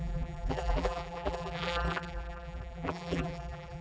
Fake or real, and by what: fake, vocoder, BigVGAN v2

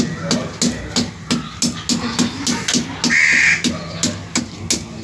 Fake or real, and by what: real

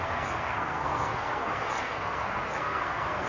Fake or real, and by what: fake, codec, SNAC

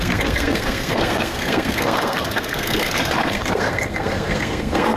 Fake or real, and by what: fake, codec, SNAC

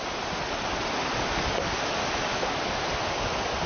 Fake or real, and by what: real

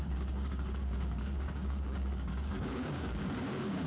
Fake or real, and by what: fake, codec, DAC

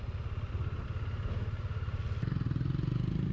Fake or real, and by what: real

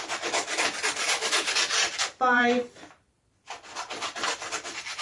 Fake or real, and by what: fake, vocoder, BigVGAN v2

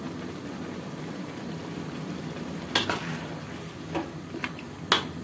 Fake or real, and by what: real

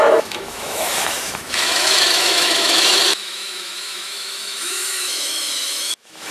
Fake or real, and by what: fake, autoencoder, DAC-VAE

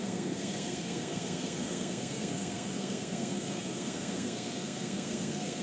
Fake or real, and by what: fake, codec, SNAC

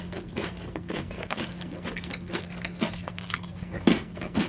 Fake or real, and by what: fake, codec, SNAC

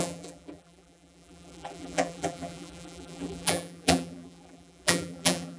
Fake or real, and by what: fake, vocoder, BigVGAN v2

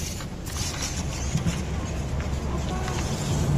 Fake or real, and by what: real